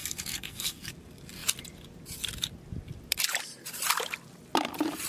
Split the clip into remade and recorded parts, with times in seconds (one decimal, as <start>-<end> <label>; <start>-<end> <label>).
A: 0.0-0.9 remade; 0.9-5.1 recorded